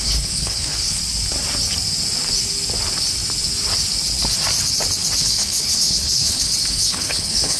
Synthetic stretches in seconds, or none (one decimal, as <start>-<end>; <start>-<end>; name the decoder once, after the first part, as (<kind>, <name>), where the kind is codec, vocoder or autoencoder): 0.0-1.0 (codec, HILCodec); 5.2-7.6